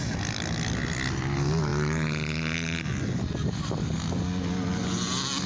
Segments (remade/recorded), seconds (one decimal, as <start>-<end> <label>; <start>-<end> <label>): 0.0-5.5 recorded